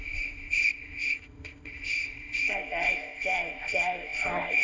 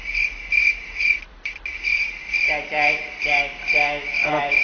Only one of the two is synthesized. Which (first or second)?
first